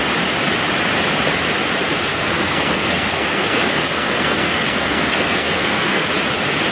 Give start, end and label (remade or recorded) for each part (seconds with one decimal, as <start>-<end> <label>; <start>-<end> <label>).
0.0-2.1 recorded; 2.1-6.1 remade; 6.1-6.7 recorded